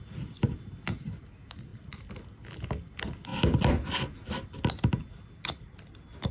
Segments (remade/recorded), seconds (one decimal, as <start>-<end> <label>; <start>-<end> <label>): 0.0-6.3 recorded